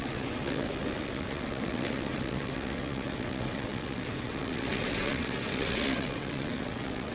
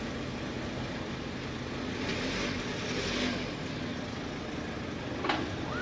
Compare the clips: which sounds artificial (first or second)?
first